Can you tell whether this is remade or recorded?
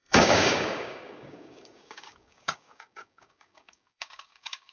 remade